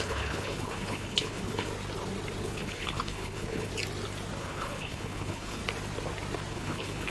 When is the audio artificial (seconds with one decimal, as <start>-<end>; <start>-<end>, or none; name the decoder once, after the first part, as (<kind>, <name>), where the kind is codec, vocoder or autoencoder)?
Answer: 0.0-1.7 (codec, HILCodec); 2.4-3.7; 4.4-5.6; 6.5-7.1

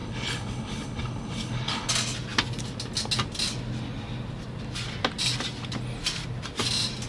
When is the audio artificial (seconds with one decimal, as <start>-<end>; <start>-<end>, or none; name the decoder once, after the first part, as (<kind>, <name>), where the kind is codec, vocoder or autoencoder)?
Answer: 0.0-1.9 (codec, HILCodec)

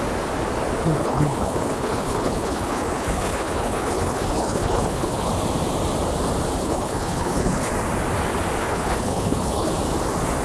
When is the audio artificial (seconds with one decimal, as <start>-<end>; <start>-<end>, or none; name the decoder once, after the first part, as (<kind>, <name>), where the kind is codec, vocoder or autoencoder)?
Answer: 1.0-5.3 (codec, HILCodec); 6.6-7.7; 8.6-9.7

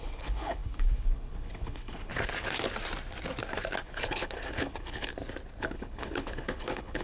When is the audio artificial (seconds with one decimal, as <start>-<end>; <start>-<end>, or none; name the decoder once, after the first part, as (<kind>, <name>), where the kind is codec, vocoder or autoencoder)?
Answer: 0.0-2.1 (codec, HILCodec); 3.8-5.1; 5.6-7.0

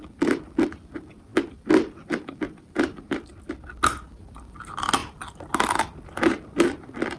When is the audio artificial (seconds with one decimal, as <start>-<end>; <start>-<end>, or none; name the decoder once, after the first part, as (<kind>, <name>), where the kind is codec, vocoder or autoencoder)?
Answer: none